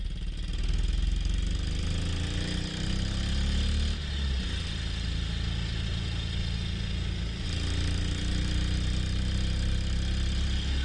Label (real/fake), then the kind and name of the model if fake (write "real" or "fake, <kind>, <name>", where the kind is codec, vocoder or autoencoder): real